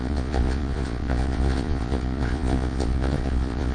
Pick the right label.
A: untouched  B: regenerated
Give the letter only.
B